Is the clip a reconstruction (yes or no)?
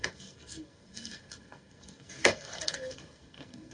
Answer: yes